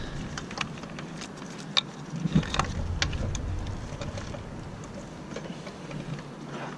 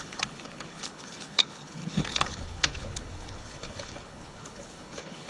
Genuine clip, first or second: first